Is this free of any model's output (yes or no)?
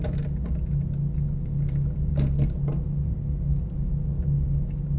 yes